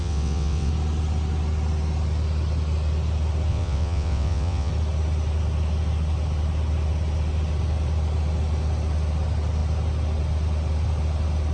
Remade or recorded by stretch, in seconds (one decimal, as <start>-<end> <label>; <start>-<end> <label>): 0.0-0.7 remade; 0.7-3.5 recorded; 3.5-4.7 remade; 4.7-11.5 recorded

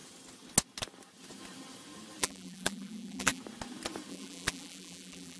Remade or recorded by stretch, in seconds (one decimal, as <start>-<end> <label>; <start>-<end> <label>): 0.0-2.2 recorded; 2.2-3.4 remade; 3.4-4.1 recorded; 4.1-5.4 remade

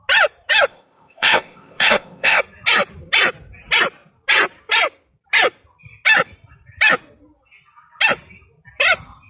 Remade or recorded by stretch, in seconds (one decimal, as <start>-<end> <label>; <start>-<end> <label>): 0.0-0.7 recorded; 0.7-2.4 remade; 2.4-9.3 recorded

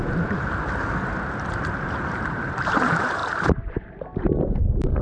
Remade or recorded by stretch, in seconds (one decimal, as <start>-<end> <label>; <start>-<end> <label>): 0.0-1.5 recorded; 1.5-5.0 remade

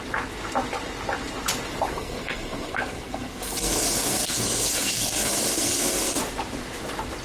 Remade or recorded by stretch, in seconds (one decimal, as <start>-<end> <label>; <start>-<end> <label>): 0.0-1.9 recorded; 1.9-6.2 remade; 6.2-7.2 recorded

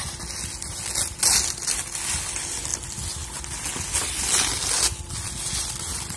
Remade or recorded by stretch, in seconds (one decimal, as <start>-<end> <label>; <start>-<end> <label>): 0.0-6.2 recorded

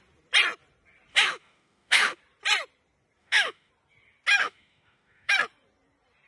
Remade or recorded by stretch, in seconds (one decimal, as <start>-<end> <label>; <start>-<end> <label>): 0.0-1.1 recorded; 1.1-2.2 remade; 2.2-3.2 recorded; 3.2-3.7 remade; 3.7-4.4 recorded; 4.4-5.3 remade; 5.3-6.3 recorded

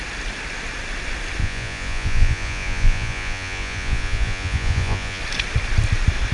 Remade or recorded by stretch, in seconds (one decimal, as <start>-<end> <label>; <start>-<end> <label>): 0.0-1.4 recorded; 1.4-5.2 remade; 5.2-6.3 recorded